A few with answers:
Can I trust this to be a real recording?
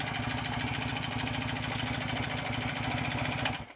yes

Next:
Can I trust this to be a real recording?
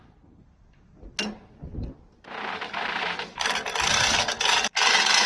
yes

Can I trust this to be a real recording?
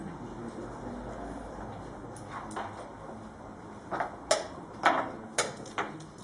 yes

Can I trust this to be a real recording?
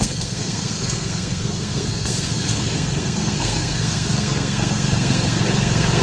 no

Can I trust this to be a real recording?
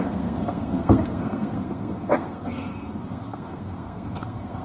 no